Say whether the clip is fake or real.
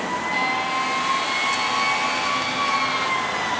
real